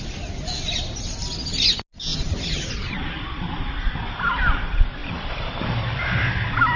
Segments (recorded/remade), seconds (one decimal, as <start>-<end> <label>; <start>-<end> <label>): 0.0-2.1 recorded; 2.1-4.3 remade; 4.3-5.0 recorded; 5.0-5.7 remade; 5.7-6.8 recorded